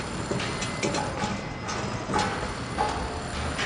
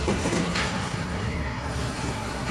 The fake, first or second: second